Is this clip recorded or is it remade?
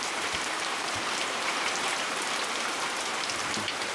remade